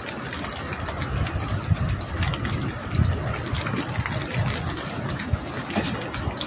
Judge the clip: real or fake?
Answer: real